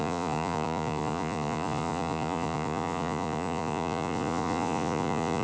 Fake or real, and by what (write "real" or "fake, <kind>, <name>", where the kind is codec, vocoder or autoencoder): fake, vocoder, Vocos